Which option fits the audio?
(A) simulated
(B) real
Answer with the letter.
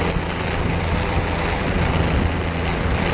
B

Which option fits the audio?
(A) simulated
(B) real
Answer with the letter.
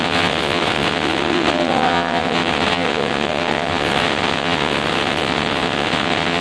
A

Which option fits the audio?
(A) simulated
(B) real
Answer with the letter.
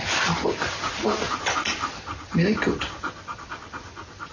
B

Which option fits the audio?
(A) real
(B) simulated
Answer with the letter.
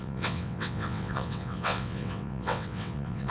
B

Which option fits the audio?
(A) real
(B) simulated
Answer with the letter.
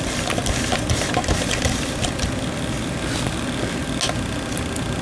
A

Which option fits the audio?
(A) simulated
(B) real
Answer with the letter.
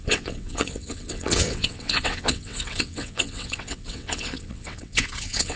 A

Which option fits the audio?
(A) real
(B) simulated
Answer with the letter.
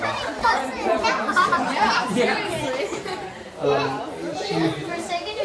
A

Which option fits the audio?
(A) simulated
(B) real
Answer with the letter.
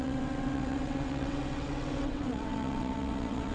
A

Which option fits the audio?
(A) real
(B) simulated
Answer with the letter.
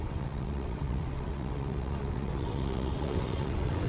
B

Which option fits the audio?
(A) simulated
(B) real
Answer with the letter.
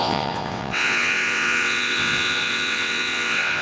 A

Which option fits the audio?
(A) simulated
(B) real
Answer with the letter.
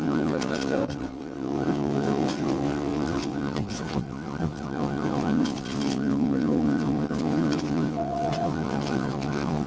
A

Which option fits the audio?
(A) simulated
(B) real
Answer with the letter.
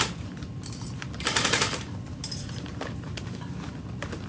B